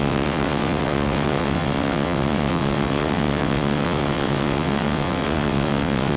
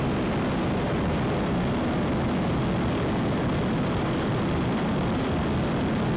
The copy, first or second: first